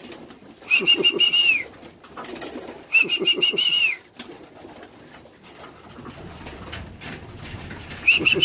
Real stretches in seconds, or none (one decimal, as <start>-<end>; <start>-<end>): 0.0-8.4